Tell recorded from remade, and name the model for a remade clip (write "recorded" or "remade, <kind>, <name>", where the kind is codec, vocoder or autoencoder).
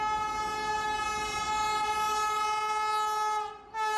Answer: recorded